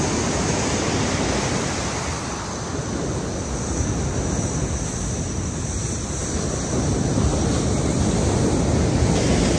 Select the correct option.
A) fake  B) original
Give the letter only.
B